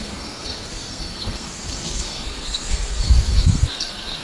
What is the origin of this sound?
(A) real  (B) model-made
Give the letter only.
B